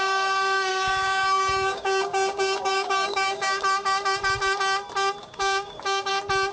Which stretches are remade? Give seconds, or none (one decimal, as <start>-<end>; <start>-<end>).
0.7-3.6; 5.2-6.1